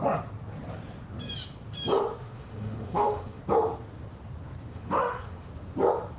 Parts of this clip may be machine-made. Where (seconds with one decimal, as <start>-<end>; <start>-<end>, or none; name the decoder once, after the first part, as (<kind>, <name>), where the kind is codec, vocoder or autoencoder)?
2.2-3.4 (autoencoder, DAC-VAE); 4.7-5.5